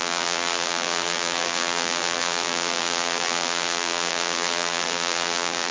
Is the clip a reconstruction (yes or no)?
yes